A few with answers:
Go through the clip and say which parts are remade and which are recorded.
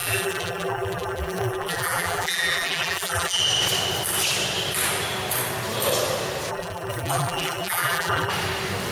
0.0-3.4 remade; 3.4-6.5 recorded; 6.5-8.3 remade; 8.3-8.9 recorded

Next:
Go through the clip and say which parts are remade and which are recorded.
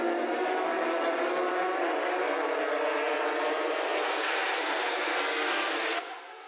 0.0-4.0 recorded; 4.0-6.5 remade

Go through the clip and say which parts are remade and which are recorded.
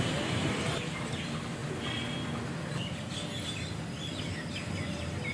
0.0-5.3 recorded